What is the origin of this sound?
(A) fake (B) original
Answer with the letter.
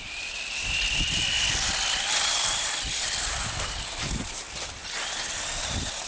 B